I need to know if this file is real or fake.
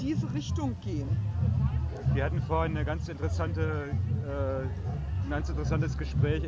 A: real